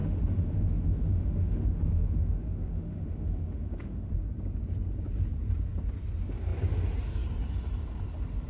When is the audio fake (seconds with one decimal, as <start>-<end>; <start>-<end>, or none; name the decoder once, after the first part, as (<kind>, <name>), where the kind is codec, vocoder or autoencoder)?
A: 0.0-4.1 (autoencoder, DAC-VAE)